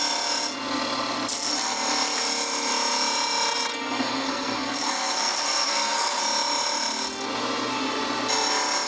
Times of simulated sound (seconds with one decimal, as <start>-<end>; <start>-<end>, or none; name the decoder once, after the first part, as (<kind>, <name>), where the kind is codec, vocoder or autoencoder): 3.7-6.2 (codec, SNAC)